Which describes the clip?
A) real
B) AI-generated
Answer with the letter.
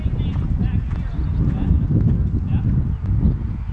A